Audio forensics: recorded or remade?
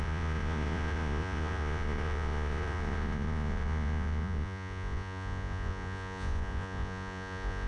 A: remade